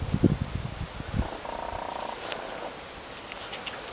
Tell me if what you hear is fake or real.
real